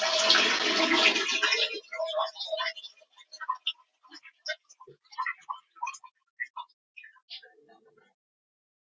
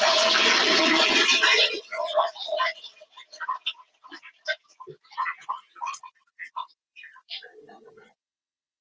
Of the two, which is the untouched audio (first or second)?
first